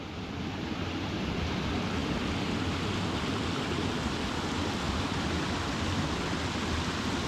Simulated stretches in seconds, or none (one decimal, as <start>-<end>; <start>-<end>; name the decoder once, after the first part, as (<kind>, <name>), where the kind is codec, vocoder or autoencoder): none